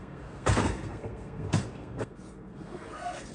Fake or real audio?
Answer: fake